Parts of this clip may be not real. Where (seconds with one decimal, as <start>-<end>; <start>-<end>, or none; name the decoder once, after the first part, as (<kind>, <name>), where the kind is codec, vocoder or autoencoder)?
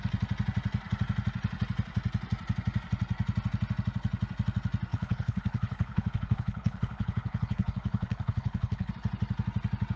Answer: 4.9-8.9 (codec, HILCodec)